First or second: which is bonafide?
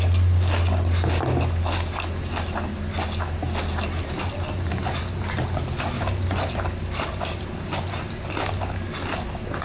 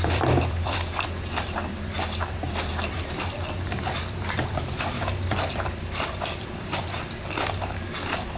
first